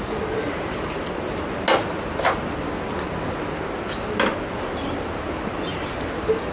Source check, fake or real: real